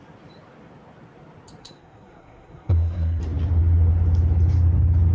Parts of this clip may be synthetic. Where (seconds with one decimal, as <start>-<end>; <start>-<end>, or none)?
1.6-3.2